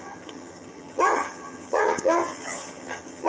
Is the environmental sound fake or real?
fake